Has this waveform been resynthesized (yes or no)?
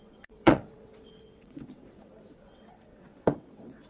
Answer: yes